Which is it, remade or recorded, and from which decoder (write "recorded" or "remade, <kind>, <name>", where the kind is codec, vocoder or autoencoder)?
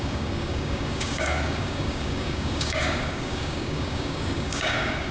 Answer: remade, codec, DAC